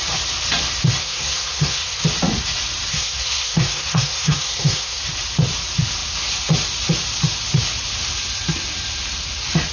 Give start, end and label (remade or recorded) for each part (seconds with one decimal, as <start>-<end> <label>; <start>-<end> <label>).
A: 0.0-1.0 recorded; 1.0-2.0 remade; 2.0-2.9 recorded; 2.9-5.0 remade; 5.0-9.7 recorded